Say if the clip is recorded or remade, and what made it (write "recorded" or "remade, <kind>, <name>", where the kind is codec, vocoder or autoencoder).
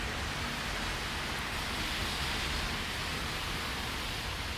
recorded